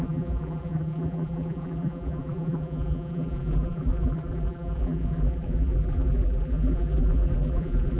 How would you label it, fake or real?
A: fake